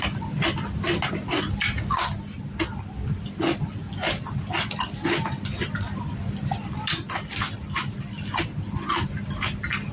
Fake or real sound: real